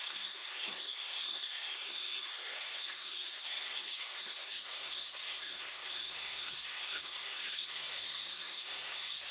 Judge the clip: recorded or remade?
remade